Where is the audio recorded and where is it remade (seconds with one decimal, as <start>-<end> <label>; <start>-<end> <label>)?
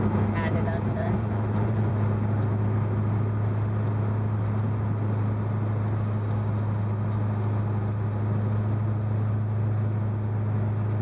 0.0-0.9 recorded; 0.9-1.9 remade; 1.9-11.0 recorded